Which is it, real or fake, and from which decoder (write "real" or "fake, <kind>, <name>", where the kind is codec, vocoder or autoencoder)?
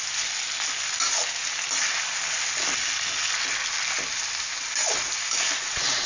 real